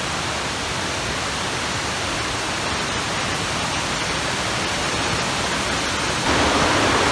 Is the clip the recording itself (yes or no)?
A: yes